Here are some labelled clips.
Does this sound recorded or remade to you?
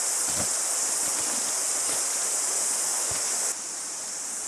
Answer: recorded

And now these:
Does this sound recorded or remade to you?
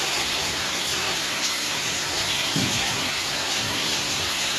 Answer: remade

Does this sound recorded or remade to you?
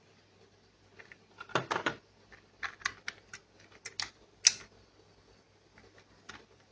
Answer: recorded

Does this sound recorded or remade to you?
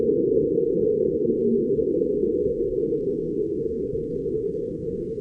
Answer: remade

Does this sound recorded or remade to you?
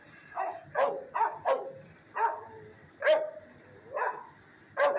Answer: recorded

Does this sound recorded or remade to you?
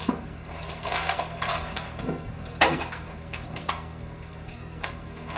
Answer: remade